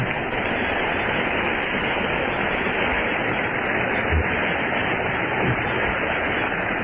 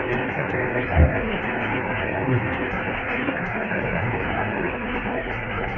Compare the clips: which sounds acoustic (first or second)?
first